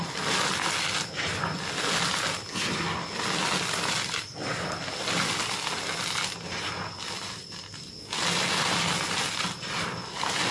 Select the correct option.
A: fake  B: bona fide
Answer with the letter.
B